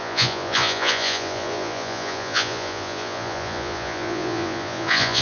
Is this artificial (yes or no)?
yes